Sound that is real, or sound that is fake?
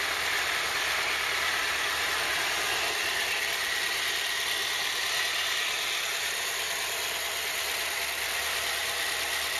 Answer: real